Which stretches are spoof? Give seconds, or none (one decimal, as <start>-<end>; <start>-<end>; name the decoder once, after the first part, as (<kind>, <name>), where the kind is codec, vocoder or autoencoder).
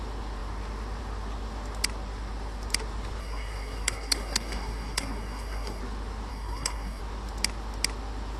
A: 3.2-5.8 (codec, SNAC); 6.3-7.0